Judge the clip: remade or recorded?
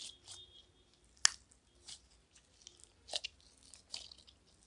recorded